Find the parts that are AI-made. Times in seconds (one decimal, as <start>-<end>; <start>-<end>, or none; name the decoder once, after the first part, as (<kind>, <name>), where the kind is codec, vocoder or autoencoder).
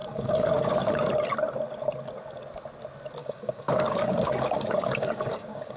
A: 0.0-1.1 (codec, DAC); 3.2-5.8